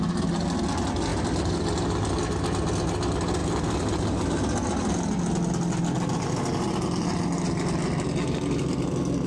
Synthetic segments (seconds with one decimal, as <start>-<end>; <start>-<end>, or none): none